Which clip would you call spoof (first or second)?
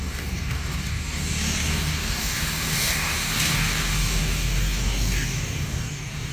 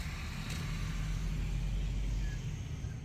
first